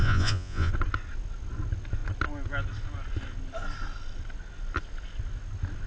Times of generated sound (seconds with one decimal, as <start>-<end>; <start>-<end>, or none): 0.0-0.7